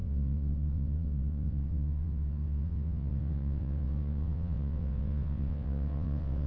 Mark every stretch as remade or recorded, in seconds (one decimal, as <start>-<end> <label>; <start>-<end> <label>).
0.0-6.5 remade